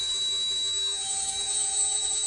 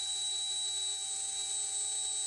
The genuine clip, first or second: second